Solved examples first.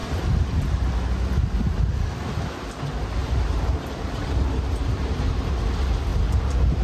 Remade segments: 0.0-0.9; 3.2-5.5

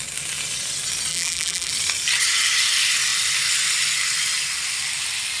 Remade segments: 1.1-1.7

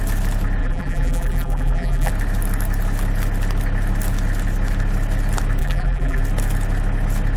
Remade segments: 0.6-2.1; 5.6-6.2